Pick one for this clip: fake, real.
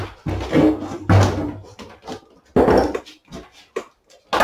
real